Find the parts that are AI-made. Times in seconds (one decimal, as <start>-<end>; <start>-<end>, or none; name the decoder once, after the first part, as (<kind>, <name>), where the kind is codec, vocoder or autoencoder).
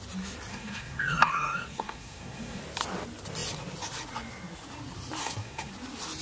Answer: 0.5-2.6 (codec, SNAC); 5.2-5.7